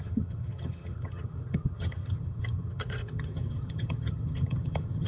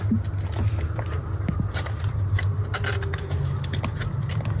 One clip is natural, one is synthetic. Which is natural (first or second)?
second